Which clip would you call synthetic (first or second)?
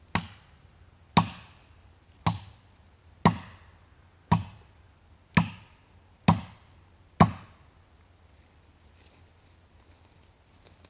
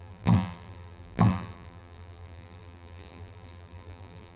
second